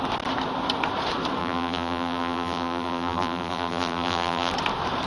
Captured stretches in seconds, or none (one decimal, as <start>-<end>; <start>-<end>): 0.0-1.4; 4.5-5.1